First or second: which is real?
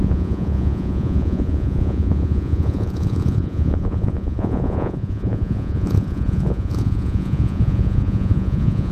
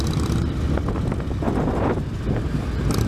second